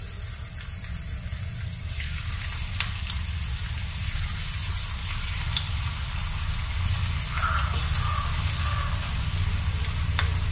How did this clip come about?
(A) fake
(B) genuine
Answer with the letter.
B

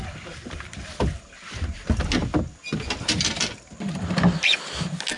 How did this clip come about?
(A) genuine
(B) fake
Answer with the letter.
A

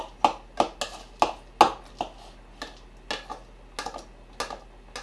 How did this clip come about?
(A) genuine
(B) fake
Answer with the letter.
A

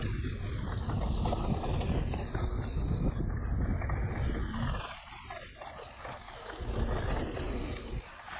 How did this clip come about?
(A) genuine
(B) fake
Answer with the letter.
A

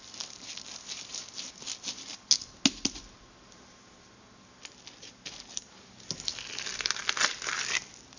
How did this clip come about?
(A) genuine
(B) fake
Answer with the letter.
A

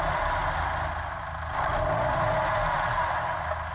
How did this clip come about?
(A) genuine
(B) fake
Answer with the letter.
A